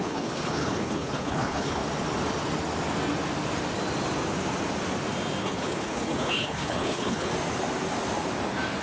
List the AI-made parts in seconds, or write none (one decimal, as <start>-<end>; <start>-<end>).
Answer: 0.0-1.8; 5.4-7.3